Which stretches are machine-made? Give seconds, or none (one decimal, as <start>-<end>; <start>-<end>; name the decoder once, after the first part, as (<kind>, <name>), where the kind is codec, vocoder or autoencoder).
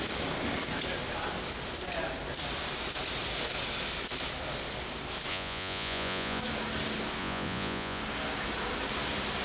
5.3-6.4 (vocoder, Vocos); 7.2-8.0